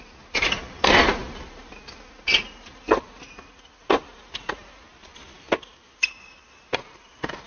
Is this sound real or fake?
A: real